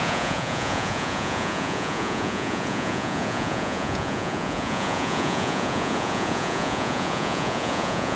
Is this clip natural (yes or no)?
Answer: no